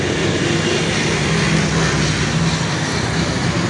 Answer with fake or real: real